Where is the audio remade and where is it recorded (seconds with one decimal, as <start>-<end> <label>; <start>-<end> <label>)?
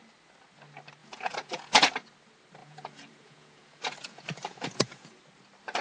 0.0-1.0 recorded; 1.0-1.9 remade; 1.9-2.6 recorded; 2.6-5.2 remade; 5.2-5.8 recorded